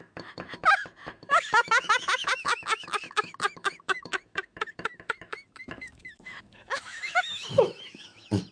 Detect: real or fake fake